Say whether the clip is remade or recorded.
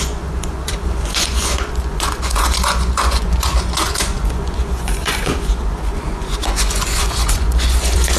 remade